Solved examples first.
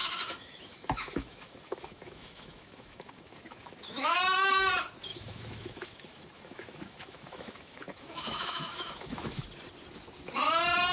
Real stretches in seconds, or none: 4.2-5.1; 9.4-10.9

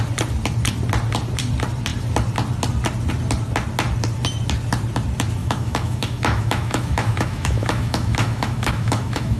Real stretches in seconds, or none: 0.0-5.4